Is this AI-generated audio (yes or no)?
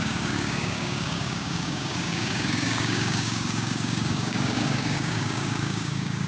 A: yes